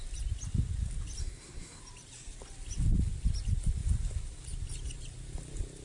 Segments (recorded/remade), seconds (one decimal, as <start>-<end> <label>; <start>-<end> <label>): 0.0-1.2 recorded; 1.2-1.8 remade; 1.8-5.8 recorded